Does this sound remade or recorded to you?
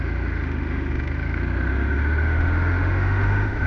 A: remade